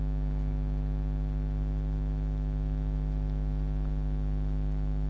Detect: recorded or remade recorded